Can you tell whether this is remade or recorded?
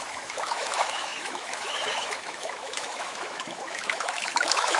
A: remade